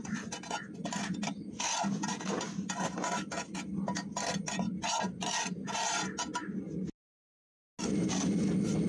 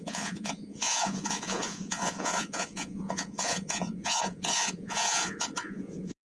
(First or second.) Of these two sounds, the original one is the first